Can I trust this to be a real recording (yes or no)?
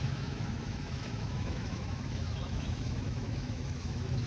no